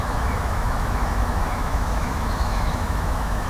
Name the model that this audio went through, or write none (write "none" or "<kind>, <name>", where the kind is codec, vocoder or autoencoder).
autoencoder, DAC-VAE